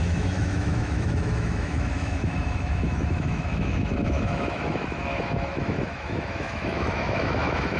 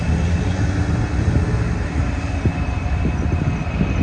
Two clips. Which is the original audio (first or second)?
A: second